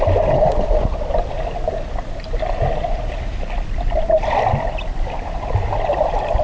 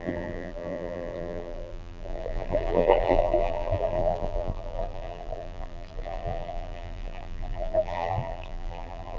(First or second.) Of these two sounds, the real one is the first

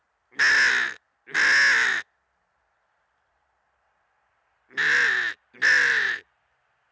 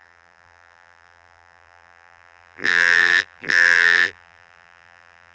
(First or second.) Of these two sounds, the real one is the first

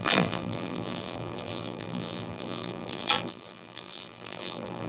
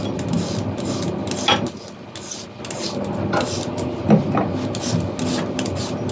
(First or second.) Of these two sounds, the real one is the second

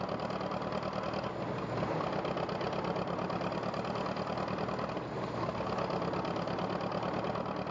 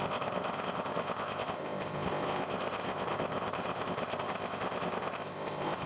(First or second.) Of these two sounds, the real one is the first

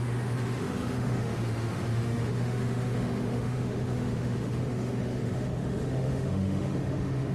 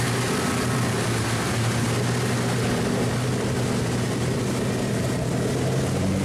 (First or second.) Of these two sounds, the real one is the second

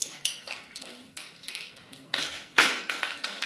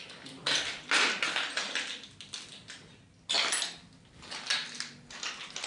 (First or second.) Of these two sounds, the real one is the second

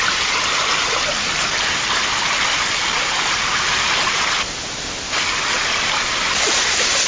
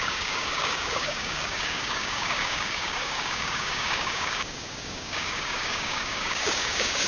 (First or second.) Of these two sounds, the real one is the first